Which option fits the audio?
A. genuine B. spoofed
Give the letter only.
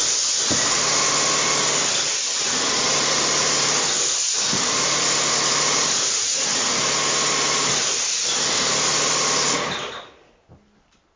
A